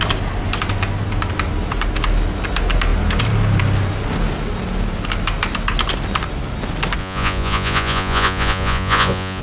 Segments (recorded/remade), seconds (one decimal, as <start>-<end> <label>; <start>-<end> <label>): 0.0-7.0 recorded; 7.0-9.4 remade